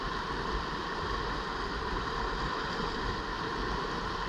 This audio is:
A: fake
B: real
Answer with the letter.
B